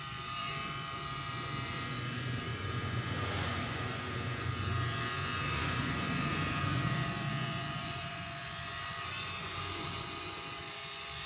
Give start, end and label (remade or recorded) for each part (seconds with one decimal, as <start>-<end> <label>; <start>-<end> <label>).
0.0-11.3 remade